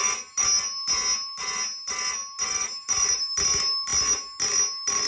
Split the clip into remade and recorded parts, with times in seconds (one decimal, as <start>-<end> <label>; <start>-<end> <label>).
0.0-5.1 recorded